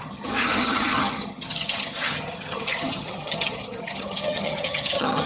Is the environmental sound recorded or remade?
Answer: remade